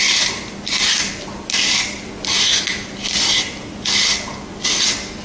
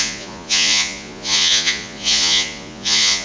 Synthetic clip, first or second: second